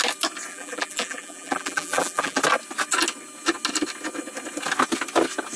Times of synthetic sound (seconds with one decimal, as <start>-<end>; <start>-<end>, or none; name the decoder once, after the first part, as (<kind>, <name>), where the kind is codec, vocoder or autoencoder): 0.5-2.4 (vocoder, BigVGAN v2)